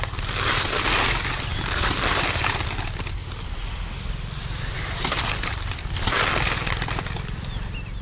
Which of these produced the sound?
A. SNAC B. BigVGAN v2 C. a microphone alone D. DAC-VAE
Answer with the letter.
B